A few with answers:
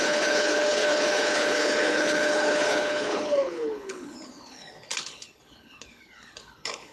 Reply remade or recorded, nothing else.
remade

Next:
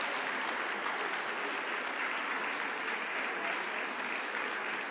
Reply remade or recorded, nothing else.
recorded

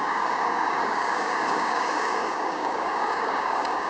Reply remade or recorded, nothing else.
remade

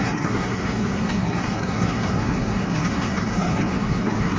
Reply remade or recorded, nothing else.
remade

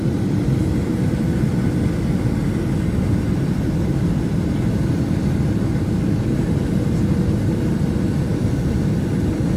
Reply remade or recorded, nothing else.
recorded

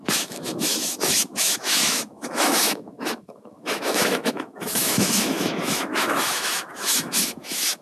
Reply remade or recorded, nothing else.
remade